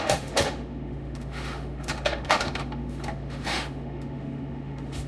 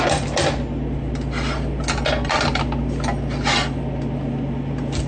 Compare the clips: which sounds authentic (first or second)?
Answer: second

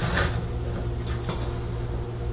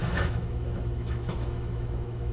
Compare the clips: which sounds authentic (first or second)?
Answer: first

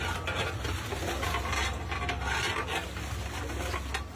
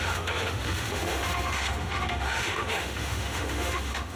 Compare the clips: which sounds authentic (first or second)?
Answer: first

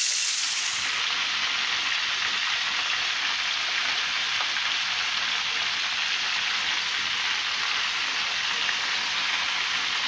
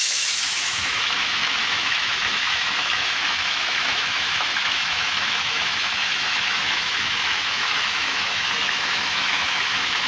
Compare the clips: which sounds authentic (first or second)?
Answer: first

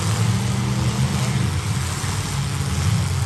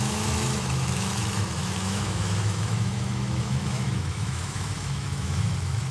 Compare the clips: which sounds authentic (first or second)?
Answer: first